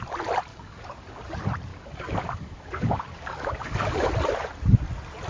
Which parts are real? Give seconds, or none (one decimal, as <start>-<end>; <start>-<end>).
0.0-0.5; 1.2-1.7; 4.1-5.3